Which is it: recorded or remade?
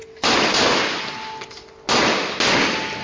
recorded